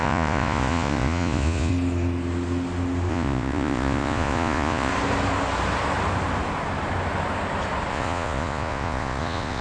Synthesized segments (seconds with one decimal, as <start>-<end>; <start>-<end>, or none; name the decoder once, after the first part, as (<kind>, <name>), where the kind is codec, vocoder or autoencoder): 0.0-1.7 (vocoder, Vocos); 3.1-4.9; 7.9-9.6